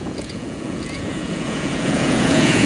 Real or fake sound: fake